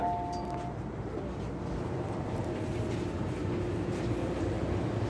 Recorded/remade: recorded